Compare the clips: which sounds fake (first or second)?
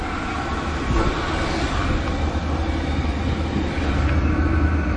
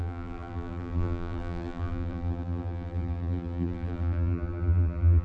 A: second